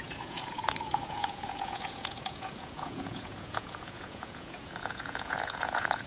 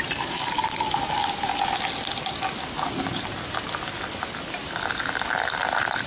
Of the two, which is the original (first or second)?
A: second